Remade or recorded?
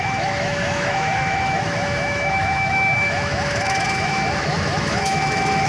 remade